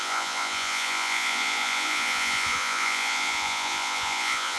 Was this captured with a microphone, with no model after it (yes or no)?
no